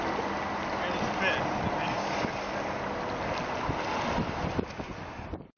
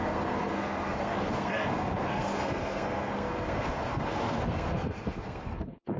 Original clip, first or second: first